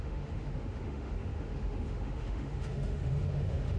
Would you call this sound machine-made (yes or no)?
yes